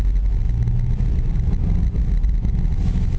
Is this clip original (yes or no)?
yes